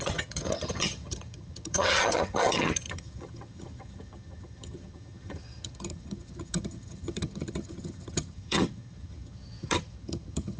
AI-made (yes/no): yes